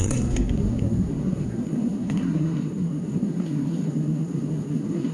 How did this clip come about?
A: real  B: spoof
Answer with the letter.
B